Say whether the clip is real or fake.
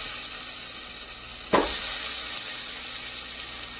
real